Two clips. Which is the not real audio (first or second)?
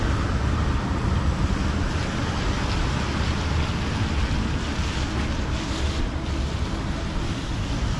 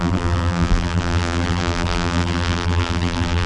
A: second